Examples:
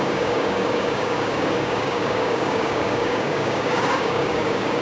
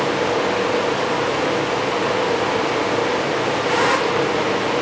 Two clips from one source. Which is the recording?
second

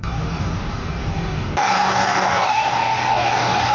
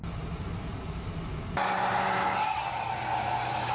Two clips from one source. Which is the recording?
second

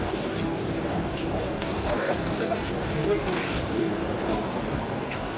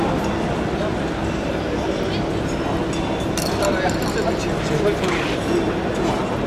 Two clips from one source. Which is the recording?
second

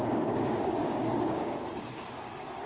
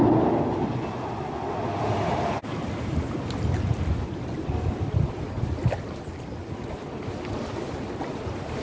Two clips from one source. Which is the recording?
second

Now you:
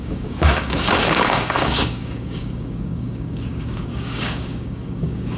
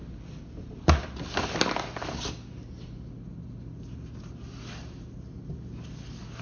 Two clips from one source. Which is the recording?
second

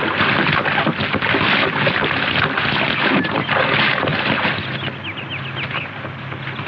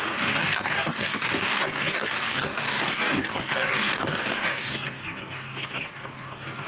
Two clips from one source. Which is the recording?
first